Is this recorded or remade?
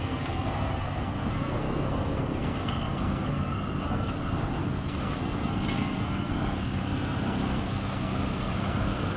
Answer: remade